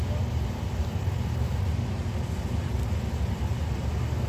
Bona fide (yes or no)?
yes